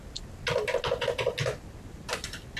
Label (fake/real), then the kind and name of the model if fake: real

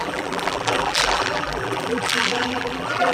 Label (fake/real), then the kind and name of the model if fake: fake, vocoder, BigVGAN v2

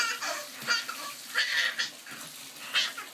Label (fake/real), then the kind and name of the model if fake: real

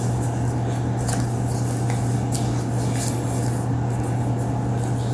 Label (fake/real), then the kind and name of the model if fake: real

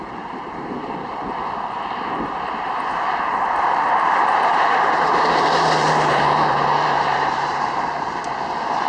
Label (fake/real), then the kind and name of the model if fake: fake, vocoder, BigVGAN v2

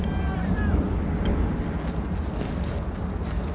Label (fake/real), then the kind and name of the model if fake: real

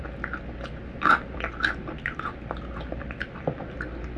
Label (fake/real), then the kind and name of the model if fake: real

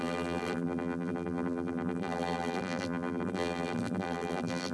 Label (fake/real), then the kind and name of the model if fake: fake, vocoder, BigVGAN v2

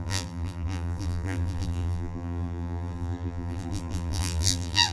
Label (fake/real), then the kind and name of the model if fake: fake, vocoder, BigVGAN v2